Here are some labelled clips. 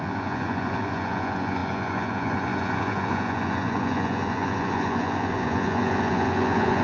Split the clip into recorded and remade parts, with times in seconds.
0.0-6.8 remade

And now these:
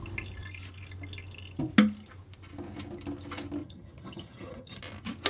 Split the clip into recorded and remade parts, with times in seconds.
0.0-3.6 recorded; 3.6-4.8 remade; 4.8-5.3 recorded

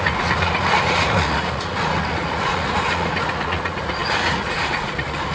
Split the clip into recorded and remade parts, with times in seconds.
0.0-5.3 remade